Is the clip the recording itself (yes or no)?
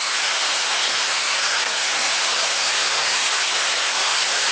no